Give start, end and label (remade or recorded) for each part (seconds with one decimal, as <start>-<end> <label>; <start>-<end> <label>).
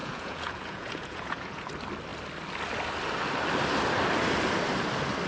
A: 0.0-1.7 remade; 1.7-5.3 recorded